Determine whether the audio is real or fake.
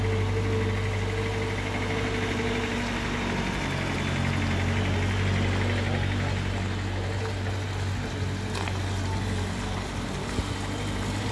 real